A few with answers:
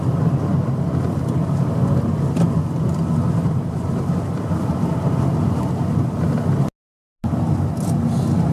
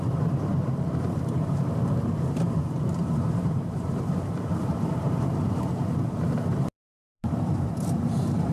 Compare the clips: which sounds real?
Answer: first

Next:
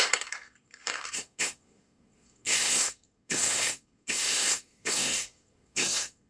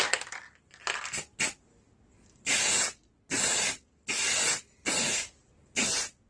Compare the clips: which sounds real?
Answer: second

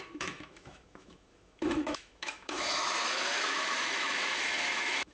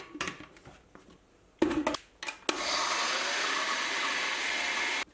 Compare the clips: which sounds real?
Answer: second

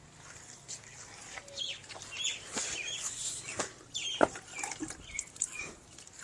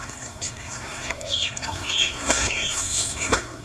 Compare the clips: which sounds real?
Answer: first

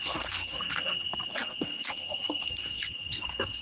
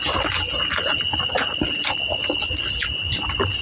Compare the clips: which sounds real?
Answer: second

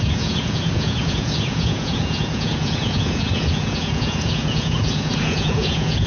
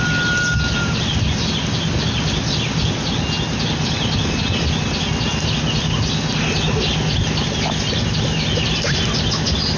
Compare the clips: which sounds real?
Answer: second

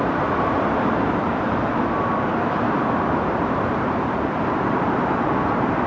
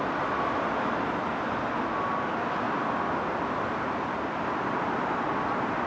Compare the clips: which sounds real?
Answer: second